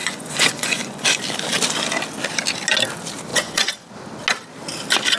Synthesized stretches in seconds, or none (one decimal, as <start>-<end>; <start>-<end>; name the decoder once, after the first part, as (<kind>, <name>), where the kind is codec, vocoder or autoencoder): 0.0-1.2 (vocoder, Vocos); 3.3-3.9